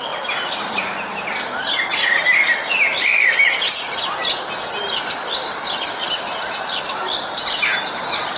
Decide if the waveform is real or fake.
real